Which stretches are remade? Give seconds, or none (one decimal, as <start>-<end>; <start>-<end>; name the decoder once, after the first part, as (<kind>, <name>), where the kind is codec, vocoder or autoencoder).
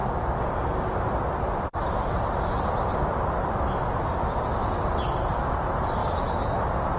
none